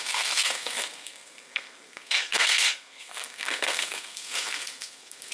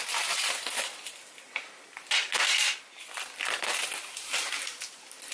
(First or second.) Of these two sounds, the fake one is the first